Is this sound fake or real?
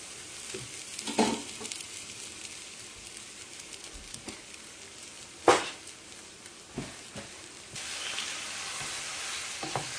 real